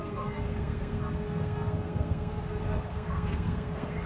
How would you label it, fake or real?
fake